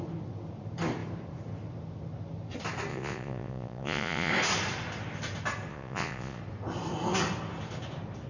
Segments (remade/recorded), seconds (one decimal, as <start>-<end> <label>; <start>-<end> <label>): 0.0-2.9 recorded; 2.9-4.3 remade; 4.3-5.7 recorded; 5.7-6.4 remade; 6.4-8.3 recorded